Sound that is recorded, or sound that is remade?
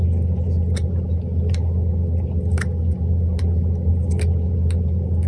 recorded